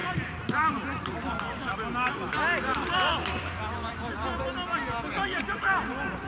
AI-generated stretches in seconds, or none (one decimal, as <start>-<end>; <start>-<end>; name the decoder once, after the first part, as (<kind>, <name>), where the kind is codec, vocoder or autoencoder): 0.0-1.7 (vocoder, BigVGAN v2); 2.7-4.0